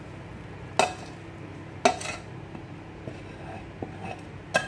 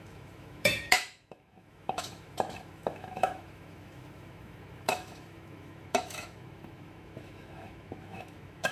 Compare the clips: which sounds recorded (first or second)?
first